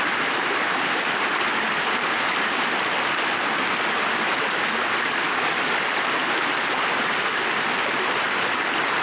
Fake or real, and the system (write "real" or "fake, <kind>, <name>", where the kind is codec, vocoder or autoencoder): real